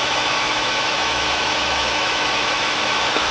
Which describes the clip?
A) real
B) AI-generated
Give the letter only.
B